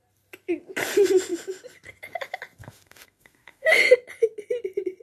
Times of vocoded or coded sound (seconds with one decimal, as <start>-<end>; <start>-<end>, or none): 2.6-3.8

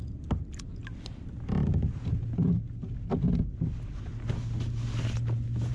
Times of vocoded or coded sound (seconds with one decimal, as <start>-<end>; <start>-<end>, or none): none

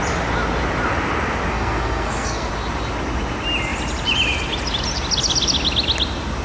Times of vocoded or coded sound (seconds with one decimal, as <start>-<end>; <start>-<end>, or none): 1.5-2.5

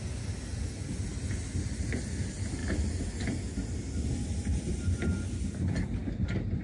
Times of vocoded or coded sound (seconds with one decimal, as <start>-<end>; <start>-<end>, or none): none

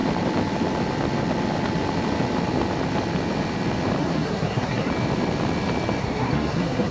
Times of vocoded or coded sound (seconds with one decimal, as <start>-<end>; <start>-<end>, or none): 4.0-4.9; 6.0-6.9

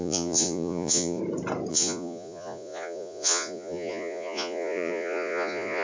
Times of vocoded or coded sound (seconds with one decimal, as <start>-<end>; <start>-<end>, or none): 0.0-1.2; 1.7-5.8

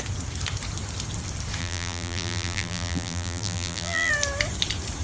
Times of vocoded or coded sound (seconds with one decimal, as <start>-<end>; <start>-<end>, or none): 1.6-4.1